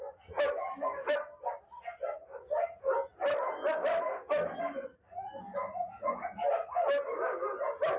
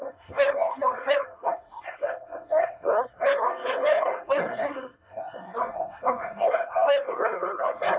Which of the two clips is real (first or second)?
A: first